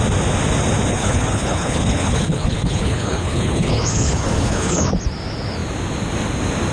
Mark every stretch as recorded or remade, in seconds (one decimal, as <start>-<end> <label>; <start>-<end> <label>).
0.0-0.9 recorded; 0.9-4.9 remade; 4.9-6.7 recorded

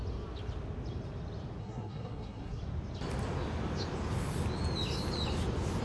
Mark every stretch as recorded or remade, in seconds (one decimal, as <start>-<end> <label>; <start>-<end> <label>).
0.0-1.6 recorded; 1.6-2.6 remade; 2.6-5.8 recorded

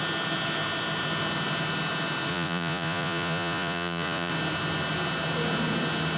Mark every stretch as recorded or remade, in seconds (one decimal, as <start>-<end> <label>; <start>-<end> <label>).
0.0-2.3 recorded; 2.3-4.3 remade; 4.3-6.2 recorded

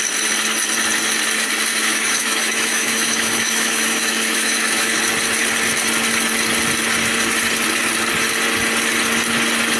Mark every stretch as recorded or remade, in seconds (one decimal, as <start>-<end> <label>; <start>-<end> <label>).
0.0-1.7 recorded; 1.7-5.0 remade; 5.0-9.8 recorded

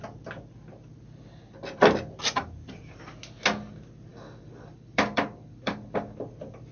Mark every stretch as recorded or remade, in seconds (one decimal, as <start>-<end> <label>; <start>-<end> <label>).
0.0-4.1 recorded; 4.1-6.2 remade; 6.2-6.7 recorded

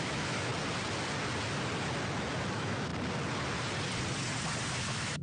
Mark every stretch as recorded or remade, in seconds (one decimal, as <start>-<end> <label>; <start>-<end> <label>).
0.0-0.5 remade; 0.5-2.5 recorded; 2.5-2.9 remade; 2.9-4.8 recorded; 4.8-5.2 remade